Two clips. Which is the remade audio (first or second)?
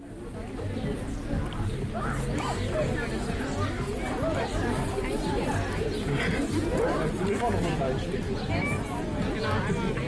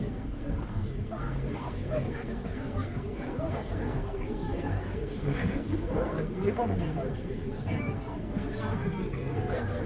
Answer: second